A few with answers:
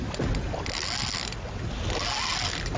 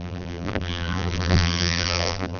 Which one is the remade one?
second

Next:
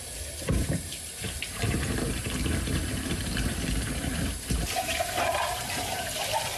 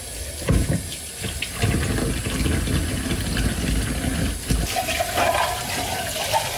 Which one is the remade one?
first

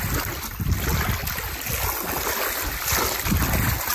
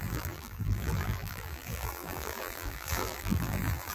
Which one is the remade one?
second